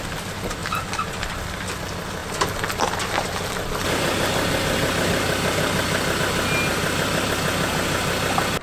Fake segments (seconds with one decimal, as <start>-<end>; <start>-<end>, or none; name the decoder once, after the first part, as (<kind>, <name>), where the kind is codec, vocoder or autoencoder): 2.2-6.2 (vocoder, BigVGAN v2); 6.7-7.3